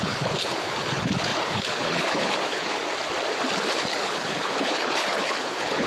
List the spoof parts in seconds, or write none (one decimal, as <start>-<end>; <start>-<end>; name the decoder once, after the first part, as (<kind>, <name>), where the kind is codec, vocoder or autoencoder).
0.0-2.8 (codec, HILCodec); 3.7-5.9